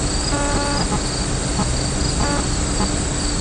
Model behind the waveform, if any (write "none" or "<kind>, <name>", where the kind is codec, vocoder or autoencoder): none